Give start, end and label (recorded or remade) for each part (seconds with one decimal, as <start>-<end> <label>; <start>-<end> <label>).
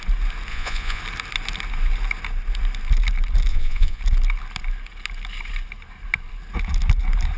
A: 0.0-0.5 recorded; 0.5-1.0 remade; 1.0-3.5 recorded; 3.5-4.0 remade; 4.0-7.4 recorded